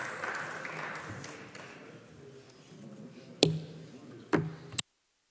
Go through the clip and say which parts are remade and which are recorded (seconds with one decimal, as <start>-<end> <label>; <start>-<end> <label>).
0.0-5.3 recorded